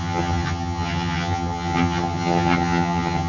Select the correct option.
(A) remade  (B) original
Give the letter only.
A